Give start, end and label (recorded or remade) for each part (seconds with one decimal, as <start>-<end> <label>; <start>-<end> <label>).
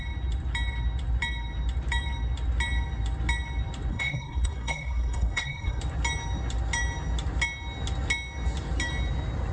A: 0.0-3.9 recorded; 3.9-5.8 remade; 5.8-9.5 recorded